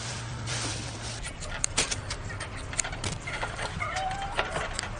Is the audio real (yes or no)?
no